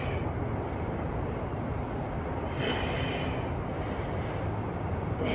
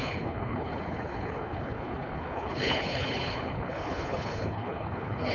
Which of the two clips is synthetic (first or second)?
second